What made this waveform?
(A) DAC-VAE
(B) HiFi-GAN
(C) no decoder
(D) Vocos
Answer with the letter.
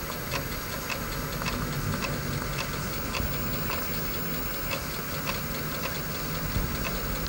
C